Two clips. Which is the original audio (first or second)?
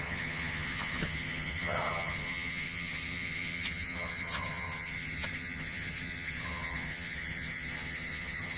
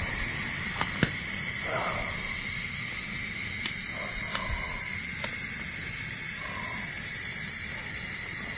second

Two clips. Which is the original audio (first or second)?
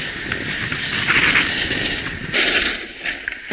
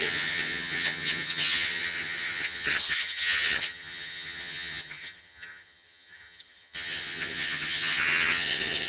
first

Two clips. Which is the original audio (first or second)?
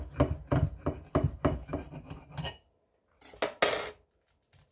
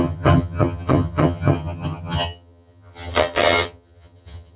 first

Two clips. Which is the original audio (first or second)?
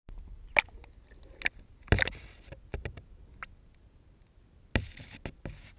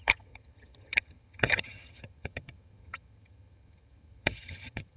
first